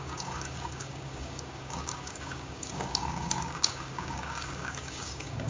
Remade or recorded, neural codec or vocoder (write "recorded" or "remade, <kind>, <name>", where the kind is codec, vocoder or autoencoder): remade, codec, DAC